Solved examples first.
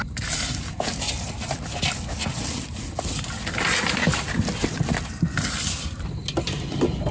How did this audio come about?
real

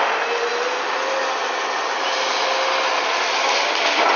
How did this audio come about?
real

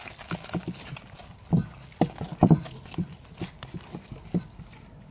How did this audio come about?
real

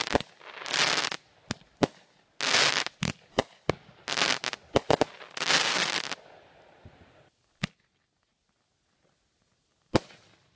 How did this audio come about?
real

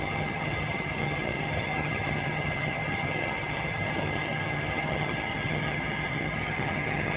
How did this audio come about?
fake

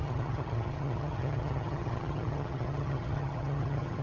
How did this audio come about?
fake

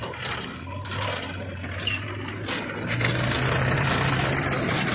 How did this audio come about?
real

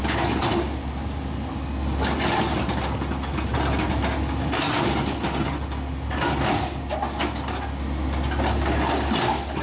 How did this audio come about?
real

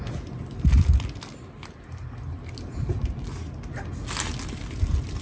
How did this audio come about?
real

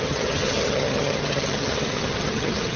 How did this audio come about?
fake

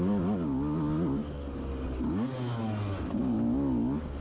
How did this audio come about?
real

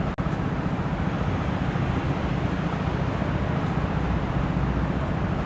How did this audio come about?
real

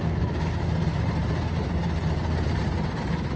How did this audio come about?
real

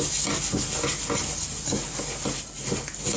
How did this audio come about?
real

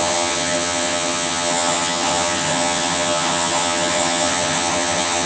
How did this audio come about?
fake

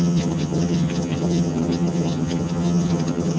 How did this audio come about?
fake